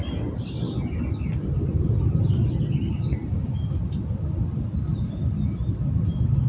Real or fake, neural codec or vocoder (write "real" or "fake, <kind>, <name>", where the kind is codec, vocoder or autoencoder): real